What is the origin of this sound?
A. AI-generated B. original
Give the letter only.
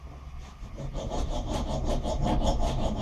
B